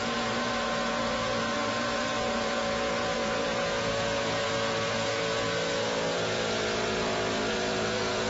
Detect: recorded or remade remade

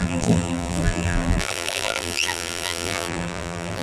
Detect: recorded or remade remade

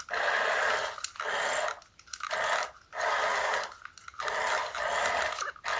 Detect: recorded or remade recorded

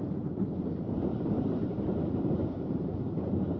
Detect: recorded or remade remade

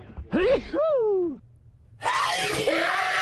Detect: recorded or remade remade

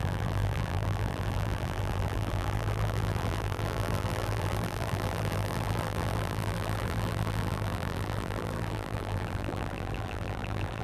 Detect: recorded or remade remade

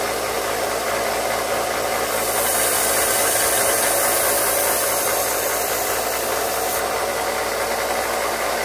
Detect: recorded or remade recorded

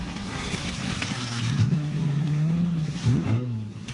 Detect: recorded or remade remade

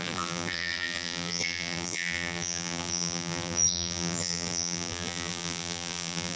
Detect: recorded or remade remade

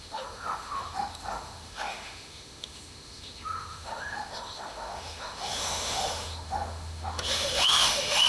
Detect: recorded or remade remade